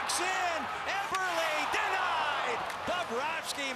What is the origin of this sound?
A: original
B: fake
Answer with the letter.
A